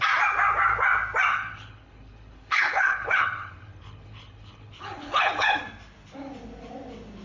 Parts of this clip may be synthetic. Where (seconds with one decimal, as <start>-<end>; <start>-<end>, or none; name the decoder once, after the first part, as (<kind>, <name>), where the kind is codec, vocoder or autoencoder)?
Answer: 1.3-5.6 (codec, HILCodec)